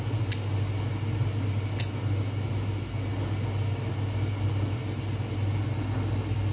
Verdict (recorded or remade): recorded